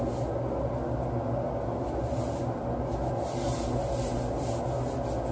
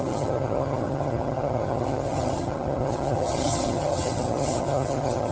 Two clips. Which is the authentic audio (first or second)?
first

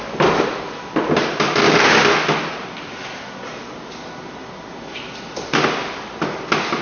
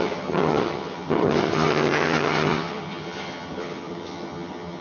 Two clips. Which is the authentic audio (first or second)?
first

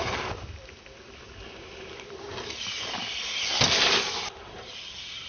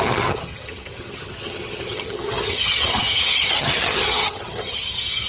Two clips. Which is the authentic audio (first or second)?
first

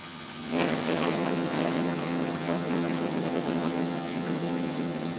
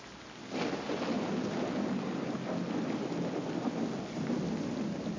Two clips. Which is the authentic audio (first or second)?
second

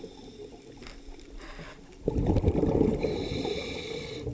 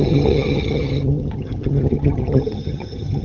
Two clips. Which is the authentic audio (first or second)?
first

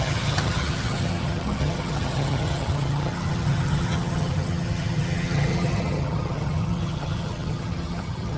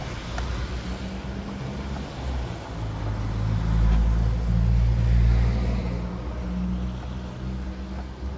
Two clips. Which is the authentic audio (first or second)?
second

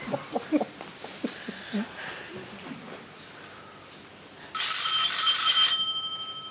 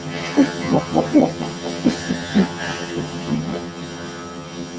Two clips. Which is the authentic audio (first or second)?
first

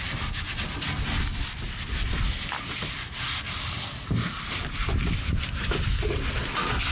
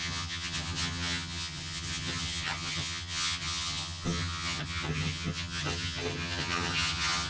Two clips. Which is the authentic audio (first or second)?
first